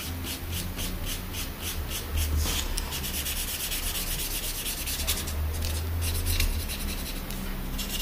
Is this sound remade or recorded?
recorded